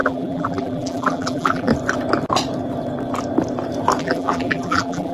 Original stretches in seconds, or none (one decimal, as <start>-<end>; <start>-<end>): 1.7-4.0